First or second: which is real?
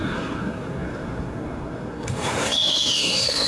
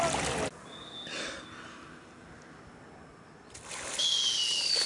second